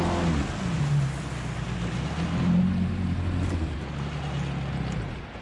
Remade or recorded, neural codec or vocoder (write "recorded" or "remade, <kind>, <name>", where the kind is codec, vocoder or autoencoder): recorded